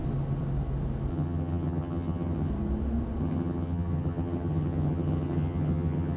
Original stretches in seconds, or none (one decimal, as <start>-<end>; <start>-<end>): 0.0-1.1; 2.5-3.2